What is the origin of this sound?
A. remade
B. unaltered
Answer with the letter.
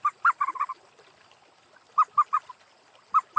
B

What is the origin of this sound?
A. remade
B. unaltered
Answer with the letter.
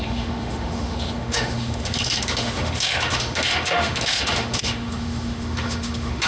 A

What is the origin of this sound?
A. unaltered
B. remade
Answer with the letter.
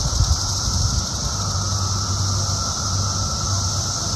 A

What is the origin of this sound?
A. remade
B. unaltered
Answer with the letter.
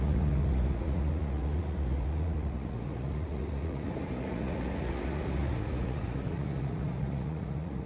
A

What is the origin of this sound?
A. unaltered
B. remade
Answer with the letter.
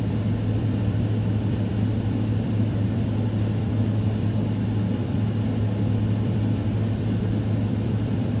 B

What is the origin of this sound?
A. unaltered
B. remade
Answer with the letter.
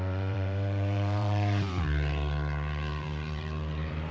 B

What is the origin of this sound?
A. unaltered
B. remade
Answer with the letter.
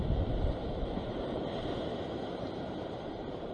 B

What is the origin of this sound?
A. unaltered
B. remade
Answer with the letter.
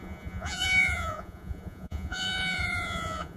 B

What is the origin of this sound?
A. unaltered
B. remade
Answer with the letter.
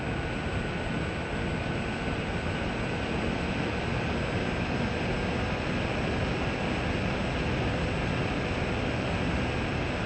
A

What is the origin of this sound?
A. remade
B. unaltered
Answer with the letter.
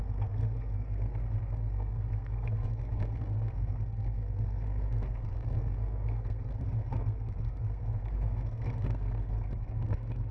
A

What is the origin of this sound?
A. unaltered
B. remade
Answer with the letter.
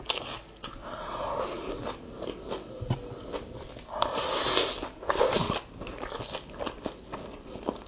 A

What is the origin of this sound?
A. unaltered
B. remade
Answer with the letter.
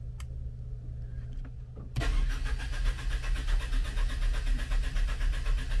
A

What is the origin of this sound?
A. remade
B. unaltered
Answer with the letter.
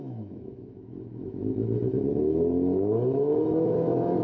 A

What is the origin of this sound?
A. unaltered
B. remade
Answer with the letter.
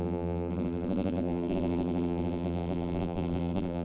B